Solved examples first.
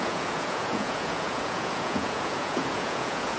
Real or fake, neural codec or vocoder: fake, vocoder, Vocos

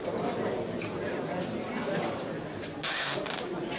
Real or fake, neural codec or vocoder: real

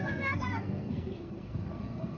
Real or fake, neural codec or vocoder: fake, codec, SNAC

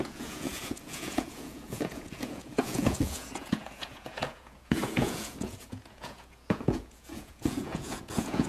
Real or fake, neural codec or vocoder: fake, vocoder, Vocos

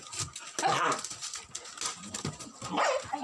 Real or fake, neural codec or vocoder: real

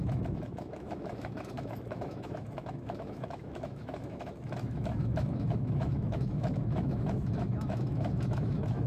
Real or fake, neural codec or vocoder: fake, autoencoder, DAC-VAE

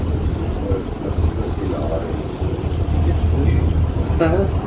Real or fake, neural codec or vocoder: real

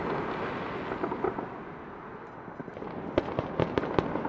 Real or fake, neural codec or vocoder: real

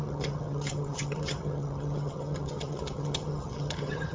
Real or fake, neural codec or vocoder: fake, vocoder, HiFi-GAN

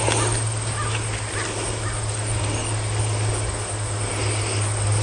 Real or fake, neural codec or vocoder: real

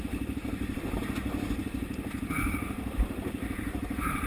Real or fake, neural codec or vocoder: fake, vocoder, BigVGAN v2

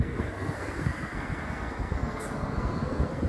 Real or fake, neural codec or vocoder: fake, codec, SNAC